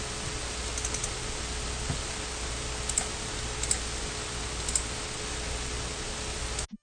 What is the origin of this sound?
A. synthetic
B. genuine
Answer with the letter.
B